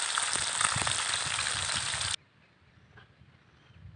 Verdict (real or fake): real